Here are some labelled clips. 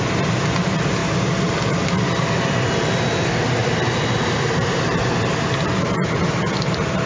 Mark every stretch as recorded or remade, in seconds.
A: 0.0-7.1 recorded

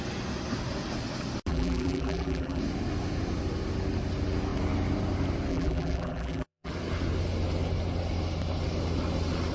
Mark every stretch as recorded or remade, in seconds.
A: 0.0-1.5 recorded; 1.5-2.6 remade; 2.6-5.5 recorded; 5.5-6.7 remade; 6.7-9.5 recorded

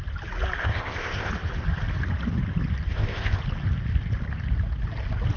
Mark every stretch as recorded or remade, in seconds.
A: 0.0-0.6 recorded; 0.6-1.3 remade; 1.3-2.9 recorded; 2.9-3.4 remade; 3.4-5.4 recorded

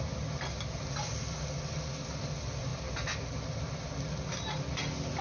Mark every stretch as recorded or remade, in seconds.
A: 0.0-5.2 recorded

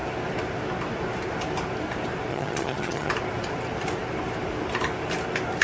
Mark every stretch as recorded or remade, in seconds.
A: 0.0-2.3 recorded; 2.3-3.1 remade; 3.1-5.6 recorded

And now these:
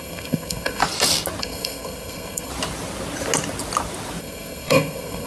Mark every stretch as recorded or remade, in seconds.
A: 0.0-0.8 remade; 0.8-1.4 recorded; 1.4-2.5 remade; 2.5-4.2 recorded; 4.2-5.3 remade

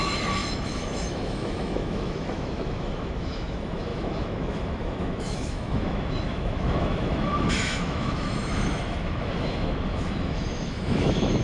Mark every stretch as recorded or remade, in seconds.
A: 0.0-11.4 remade

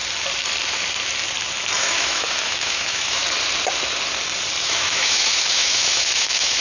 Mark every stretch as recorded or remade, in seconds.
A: 0.0-1.8 recorded; 1.8-3.2 remade; 3.2-4.6 recorded; 4.6-6.6 remade